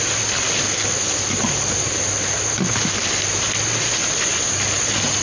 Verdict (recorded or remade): recorded